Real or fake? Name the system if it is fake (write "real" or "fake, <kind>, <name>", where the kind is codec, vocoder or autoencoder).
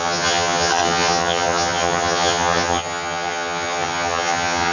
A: fake, vocoder, HiFi-GAN